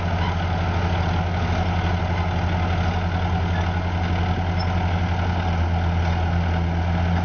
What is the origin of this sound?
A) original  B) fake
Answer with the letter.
A